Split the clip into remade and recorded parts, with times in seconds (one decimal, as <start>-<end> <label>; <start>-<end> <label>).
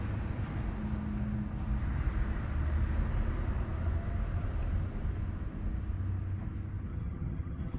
0.0-6.9 recorded; 6.9-7.8 remade